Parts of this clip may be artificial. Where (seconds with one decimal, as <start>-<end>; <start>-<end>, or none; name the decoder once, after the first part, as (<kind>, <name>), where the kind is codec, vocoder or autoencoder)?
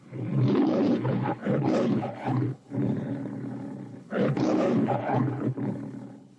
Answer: 0.0-6.4 (codec, HILCodec)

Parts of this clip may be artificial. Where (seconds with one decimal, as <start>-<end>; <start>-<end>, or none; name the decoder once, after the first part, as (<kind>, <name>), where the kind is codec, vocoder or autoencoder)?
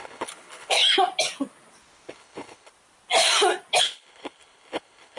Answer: 0.0-0.8 (codec, HILCodec); 2.1-2.7; 3.8-5.2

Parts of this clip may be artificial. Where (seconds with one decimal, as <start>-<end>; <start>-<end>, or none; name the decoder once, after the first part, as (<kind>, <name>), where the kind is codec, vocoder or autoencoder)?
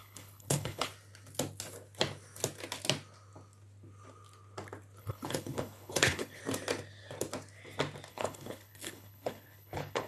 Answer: 0.0-0.9 (codec, HILCodec); 5.0-6.4; 8.1-10.1